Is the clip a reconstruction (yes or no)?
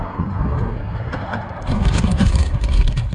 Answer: yes